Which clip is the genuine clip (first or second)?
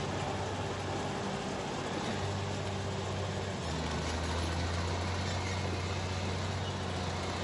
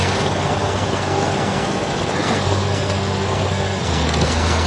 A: first